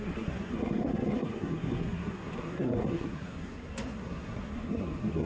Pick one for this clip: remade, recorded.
remade